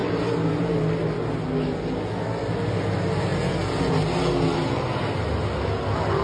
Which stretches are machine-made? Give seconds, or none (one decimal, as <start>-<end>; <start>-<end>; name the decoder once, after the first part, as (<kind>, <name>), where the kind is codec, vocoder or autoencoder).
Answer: none